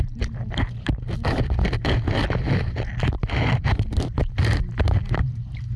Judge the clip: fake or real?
real